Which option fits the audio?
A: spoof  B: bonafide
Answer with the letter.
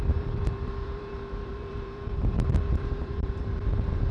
A